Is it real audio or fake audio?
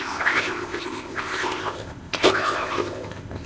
fake